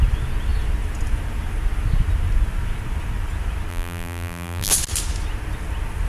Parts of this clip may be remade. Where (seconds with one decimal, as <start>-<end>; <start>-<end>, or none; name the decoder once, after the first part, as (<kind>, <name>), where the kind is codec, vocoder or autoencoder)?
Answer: 3.7-4.7 (vocoder, BigVGAN v2)